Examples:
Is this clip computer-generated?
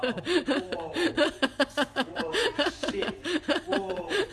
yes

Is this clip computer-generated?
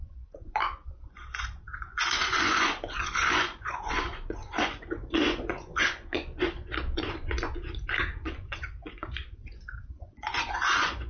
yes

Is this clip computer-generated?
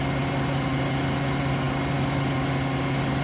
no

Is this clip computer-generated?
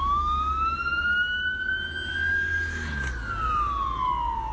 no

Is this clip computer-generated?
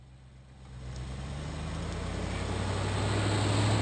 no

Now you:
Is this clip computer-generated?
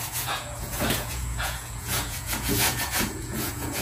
yes